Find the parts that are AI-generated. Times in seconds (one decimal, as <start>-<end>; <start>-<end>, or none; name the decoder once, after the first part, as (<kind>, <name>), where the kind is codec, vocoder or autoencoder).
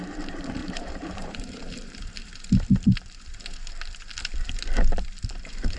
0.0-2.2 (vocoder, BigVGAN v2); 4.4-5.8